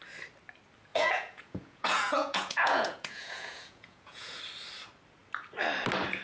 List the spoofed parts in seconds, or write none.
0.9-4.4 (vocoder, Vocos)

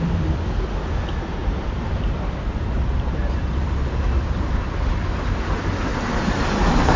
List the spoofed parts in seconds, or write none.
1.4-5.0 (vocoder, BigVGAN v2); 5.9-6.5

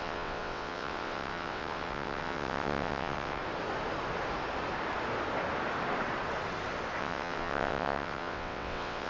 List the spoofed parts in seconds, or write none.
0.0-3.4 (vocoder, WaveNeXt); 7.0-9.1

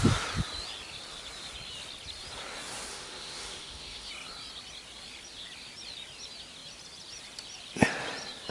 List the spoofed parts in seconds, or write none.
2.9-4.1 (autoencoder, DAC-VAE)

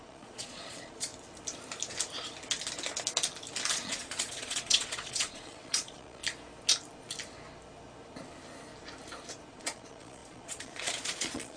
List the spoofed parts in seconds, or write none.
0.0-1.1 (vocoder, Vocos); 3.7-6.2; 9.5-11.6